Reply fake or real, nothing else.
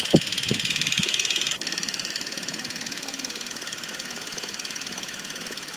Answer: fake